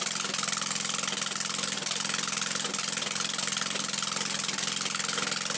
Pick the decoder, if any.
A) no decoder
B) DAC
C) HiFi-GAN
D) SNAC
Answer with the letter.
A